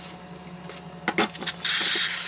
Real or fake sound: real